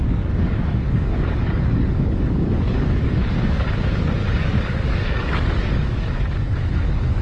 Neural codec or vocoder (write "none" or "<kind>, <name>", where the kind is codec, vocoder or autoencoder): codec, DAC